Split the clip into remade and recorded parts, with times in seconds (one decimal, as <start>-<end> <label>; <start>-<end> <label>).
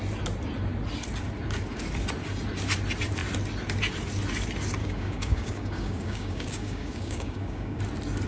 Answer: 0.0-4.8 recorded; 4.8-7.8 remade; 7.8-8.3 recorded